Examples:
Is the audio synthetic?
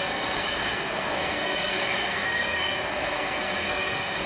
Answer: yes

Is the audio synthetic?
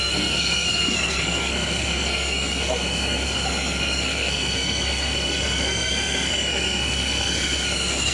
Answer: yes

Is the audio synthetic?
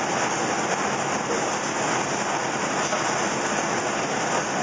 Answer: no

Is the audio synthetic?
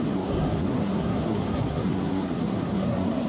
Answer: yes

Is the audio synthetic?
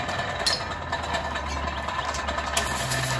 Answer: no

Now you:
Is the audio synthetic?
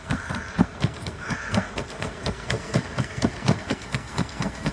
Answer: yes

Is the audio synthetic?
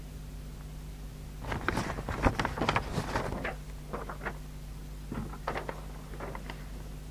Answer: no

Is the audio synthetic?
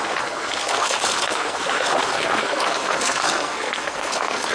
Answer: yes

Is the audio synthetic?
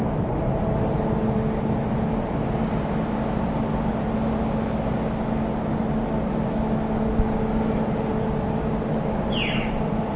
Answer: no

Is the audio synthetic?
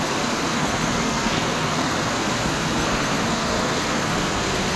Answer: yes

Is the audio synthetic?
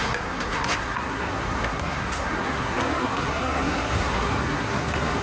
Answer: yes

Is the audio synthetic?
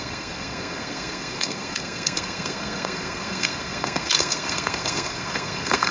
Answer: yes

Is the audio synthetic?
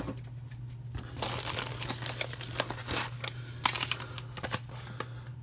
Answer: no